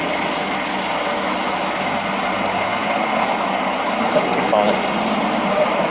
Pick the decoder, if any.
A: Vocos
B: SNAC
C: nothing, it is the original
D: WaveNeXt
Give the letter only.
C